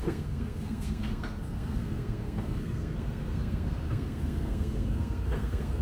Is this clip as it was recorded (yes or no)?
no